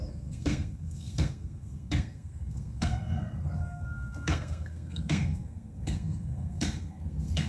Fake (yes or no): yes